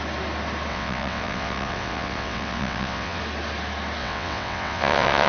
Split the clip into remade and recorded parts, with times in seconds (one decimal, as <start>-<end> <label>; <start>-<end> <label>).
0.0-0.7 recorded; 0.7-3.2 remade; 3.2-4.0 recorded; 4.0-5.3 remade